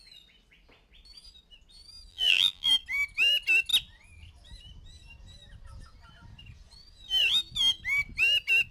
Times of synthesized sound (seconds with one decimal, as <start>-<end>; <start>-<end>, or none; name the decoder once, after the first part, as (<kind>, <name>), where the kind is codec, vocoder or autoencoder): 2.1-2.7 (vocoder, BigVGAN v2)